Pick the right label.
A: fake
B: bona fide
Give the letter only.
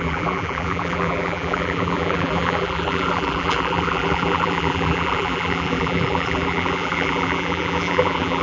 A